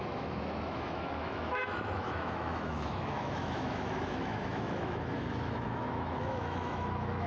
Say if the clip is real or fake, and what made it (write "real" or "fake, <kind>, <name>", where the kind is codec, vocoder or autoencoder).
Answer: fake, autoencoder, DAC-VAE